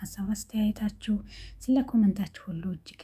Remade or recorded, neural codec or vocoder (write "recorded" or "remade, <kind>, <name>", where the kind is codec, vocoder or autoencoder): remade, autoencoder, DAC-VAE